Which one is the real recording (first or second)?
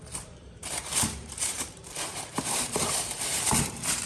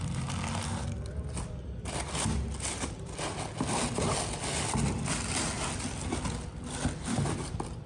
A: second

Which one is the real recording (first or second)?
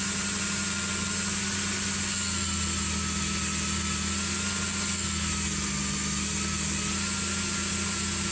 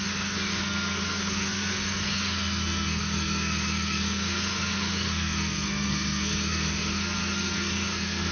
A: first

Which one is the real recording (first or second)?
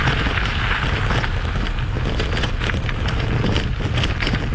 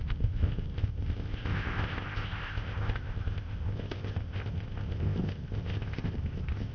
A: first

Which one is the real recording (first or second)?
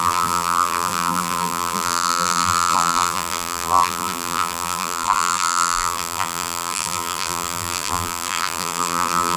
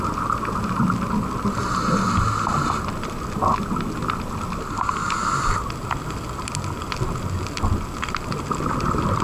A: second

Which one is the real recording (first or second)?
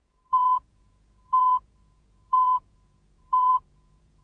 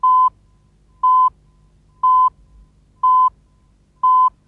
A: second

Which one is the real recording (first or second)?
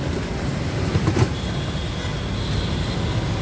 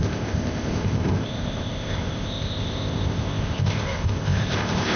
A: first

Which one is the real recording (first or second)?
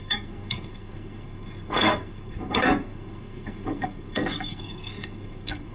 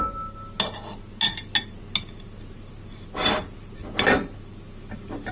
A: second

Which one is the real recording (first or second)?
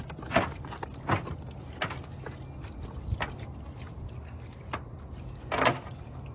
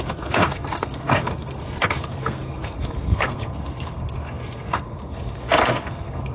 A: first